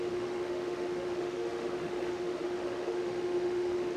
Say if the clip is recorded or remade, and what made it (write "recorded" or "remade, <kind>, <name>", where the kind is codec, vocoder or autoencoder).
remade, autoencoder, DAC-VAE